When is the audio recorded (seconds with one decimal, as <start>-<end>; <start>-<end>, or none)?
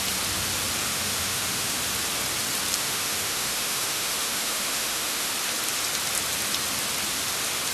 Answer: 0.0-0.9; 1.8-2.8; 5.3-7.7